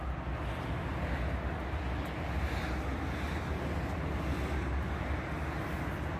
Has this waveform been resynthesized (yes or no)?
no